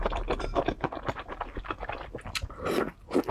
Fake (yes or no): no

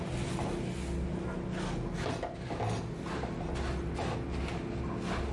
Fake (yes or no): no